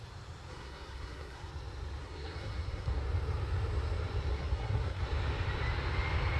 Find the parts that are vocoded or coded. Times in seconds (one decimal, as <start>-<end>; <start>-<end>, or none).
0.5-1.5; 2.0-3.0; 4.3-5.0